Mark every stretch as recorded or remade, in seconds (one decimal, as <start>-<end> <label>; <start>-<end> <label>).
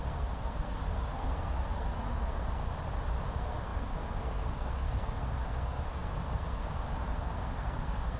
0.0-2.6 remade; 2.6-3.3 recorded; 3.3-8.2 remade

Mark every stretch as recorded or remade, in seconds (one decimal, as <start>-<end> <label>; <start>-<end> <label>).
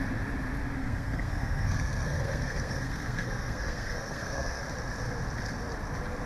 0.0-0.8 recorded; 0.8-4.6 remade; 4.6-6.3 recorded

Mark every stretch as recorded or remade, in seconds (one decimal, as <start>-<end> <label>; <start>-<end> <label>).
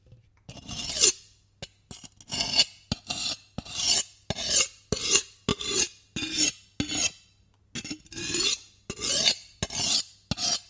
0.0-10.7 recorded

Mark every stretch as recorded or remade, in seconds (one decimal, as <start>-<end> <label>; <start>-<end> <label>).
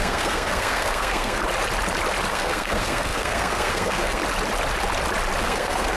0.0-1.4 remade; 1.4-2.3 recorded; 2.3-4.2 remade; 4.2-5.4 recorded; 5.4-6.0 remade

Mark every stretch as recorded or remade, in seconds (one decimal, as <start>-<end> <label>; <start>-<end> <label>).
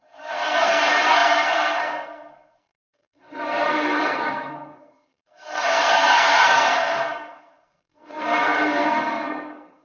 0.0-9.8 remade